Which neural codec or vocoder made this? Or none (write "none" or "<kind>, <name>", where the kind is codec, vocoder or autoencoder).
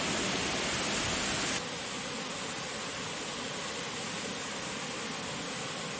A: none